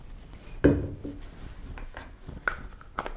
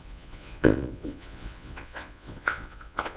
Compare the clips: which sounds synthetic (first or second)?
second